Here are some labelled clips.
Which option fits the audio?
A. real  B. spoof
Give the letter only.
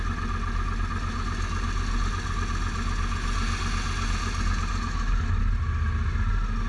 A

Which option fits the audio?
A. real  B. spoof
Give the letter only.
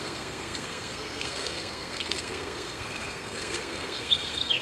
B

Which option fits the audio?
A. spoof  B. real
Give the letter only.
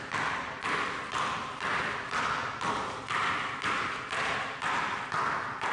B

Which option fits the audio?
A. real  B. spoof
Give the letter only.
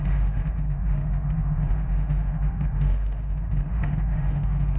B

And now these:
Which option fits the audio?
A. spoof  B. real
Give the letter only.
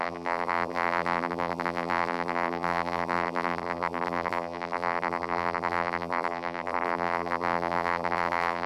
A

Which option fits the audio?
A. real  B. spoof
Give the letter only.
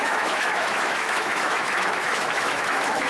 B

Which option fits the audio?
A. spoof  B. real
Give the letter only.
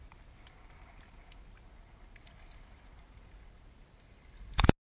B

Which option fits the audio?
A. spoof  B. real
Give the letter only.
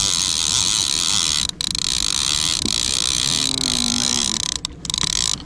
B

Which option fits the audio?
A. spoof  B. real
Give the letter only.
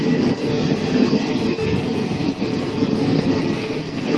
A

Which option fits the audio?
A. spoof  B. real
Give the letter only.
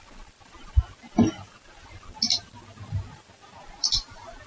B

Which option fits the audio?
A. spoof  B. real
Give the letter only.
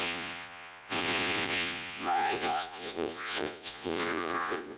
A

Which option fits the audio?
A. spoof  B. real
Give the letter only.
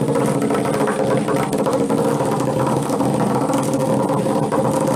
B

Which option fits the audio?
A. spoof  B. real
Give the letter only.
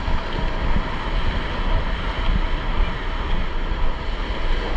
B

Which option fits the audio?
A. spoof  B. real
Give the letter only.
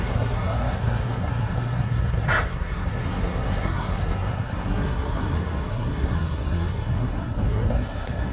A